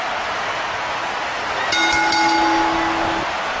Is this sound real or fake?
real